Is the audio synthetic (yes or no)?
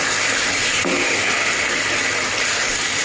no